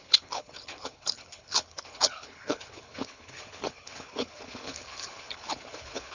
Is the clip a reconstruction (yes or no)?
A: yes